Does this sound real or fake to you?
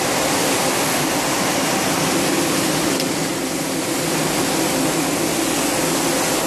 real